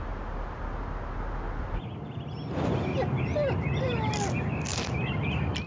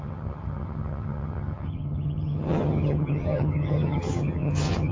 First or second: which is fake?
second